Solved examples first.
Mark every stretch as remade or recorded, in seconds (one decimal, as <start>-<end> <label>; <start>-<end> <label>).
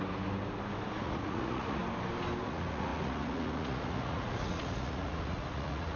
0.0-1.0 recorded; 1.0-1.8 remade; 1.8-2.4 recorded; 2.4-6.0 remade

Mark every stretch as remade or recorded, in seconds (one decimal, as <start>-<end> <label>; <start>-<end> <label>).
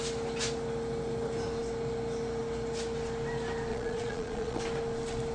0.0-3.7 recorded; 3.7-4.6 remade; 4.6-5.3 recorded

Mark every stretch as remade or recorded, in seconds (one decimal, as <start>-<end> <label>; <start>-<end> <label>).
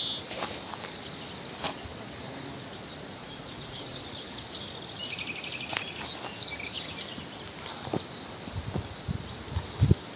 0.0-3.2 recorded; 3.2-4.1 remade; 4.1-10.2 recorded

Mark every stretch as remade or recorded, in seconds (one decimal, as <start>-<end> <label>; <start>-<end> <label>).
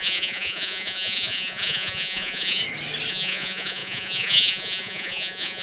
0.0-2.6 remade; 2.6-3.1 recorded; 3.1-5.6 remade